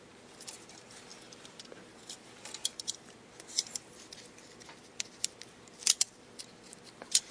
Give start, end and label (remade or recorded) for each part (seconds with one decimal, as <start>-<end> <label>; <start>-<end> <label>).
0.0-7.3 remade